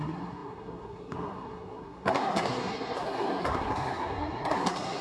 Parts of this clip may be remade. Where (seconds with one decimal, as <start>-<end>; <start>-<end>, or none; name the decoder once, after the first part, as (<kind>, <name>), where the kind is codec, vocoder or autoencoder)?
0.0-5.0 (codec, SNAC)